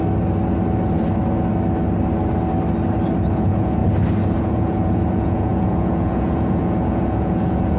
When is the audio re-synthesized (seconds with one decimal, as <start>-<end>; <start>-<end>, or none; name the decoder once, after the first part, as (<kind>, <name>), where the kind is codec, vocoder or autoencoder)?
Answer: 3.3-3.8 (vocoder, Vocos); 4.4-7.8